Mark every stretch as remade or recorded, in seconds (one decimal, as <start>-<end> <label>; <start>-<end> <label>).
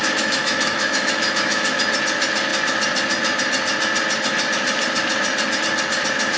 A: 0.0-1.8 remade; 1.8-6.4 recorded